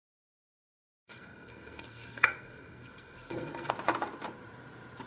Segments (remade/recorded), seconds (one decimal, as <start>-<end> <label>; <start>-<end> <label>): 0.0-0.6 recorded; 0.6-3.7 remade; 3.7-5.1 recorded